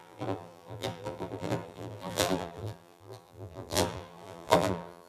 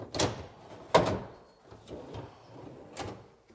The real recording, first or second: second